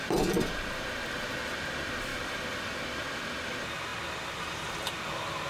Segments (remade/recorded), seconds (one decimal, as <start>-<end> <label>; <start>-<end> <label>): 0.0-1.5 remade; 1.5-2.1 recorded; 2.1-2.7 remade; 2.7-5.5 recorded